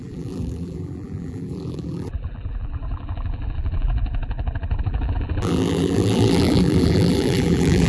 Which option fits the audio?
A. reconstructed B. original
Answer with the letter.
A